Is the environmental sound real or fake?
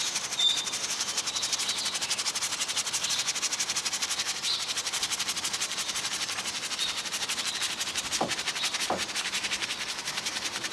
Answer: real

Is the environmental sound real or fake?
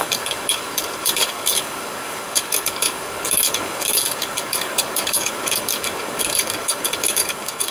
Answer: fake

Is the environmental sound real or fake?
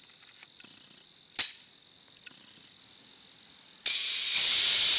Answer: real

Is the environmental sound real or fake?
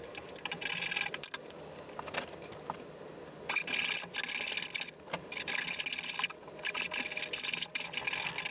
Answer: real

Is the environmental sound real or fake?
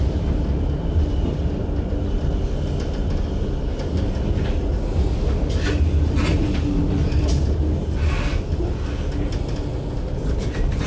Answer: real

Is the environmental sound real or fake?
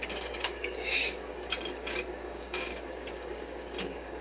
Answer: fake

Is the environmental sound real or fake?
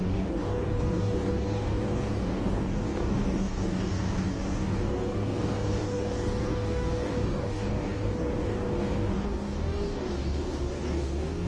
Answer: fake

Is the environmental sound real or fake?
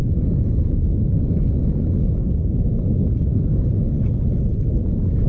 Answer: real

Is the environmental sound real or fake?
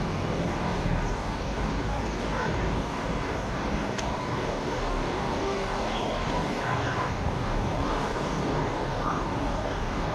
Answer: fake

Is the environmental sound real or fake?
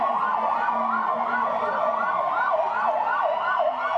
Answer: real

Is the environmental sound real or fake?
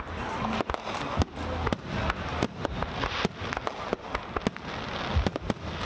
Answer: real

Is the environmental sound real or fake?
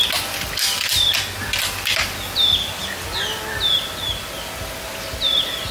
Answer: real